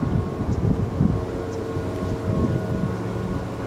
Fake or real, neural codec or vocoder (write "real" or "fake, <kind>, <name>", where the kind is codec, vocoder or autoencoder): real